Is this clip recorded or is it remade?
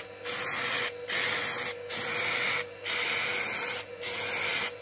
recorded